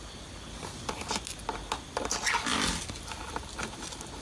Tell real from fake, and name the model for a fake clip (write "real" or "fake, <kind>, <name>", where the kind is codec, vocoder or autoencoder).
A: real